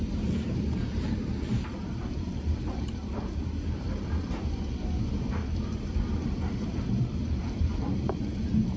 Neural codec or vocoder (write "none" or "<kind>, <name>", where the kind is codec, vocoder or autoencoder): vocoder, BigVGAN v2